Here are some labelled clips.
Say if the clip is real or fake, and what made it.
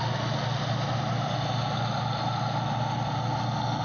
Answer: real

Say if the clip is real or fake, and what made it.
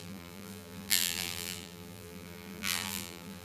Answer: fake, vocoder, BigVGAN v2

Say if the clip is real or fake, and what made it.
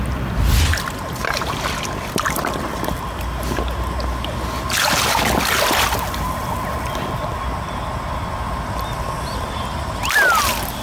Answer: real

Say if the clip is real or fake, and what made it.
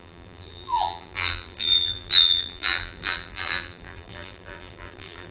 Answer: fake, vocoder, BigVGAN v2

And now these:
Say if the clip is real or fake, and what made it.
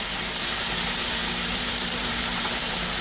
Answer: fake, vocoder, BigVGAN v2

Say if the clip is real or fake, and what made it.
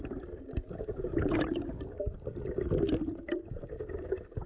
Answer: real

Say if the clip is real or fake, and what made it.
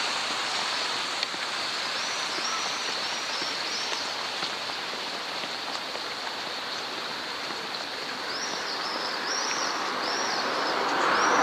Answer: fake, vocoder, BigVGAN v2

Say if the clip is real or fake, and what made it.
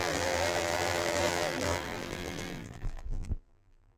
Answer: fake, vocoder, BigVGAN v2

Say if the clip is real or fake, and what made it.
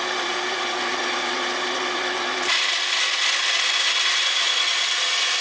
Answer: fake, vocoder, BigVGAN v2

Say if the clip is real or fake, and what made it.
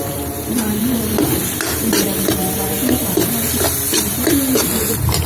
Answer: fake, vocoder, BigVGAN v2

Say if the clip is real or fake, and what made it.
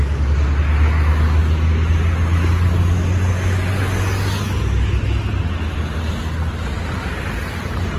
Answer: real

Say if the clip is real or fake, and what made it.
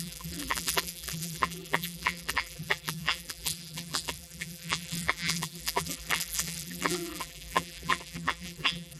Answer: fake, vocoder, BigVGAN v2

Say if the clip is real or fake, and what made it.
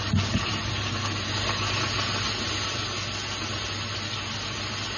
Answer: real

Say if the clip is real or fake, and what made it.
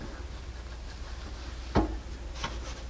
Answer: real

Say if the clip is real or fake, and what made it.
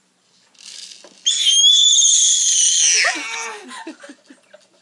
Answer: real